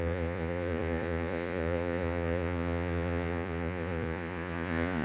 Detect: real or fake fake